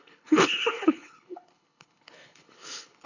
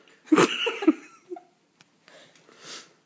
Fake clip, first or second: first